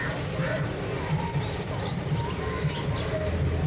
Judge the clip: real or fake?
real